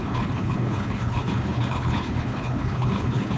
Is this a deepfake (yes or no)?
yes